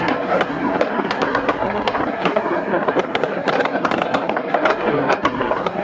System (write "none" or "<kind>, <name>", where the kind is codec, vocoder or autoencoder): codec, SNAC